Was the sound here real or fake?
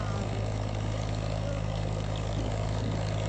fake